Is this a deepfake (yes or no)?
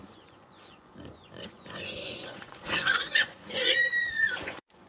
yes